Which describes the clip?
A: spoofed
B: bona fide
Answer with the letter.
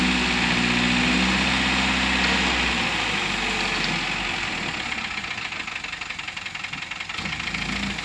B